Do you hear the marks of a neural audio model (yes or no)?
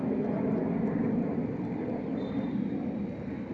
no